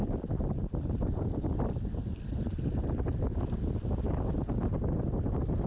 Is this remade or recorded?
recorded